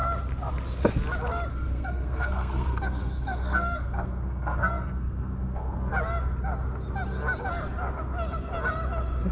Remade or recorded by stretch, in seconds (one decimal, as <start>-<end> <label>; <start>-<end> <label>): 0.0-1.5 recorded; 1.5-5.9 remade; 5.9-9.3 recorded